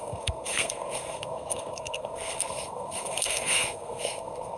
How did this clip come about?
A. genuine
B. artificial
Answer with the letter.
B